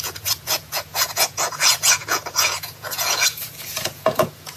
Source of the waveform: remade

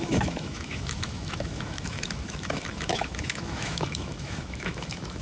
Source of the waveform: remade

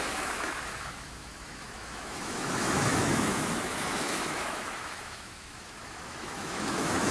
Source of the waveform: remade